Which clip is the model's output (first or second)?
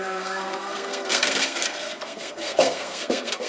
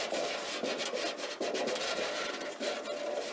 first